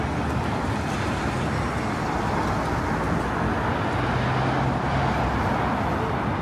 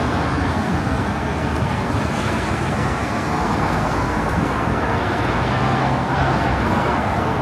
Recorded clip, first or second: first